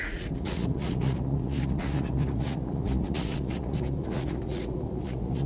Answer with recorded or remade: remade